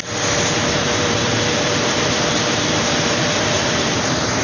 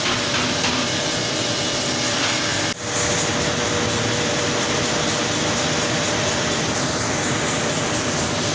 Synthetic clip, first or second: first